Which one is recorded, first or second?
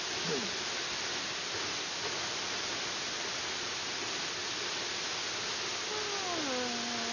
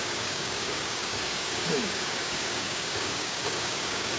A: first